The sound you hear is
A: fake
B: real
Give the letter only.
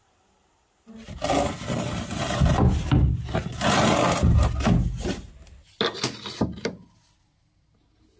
B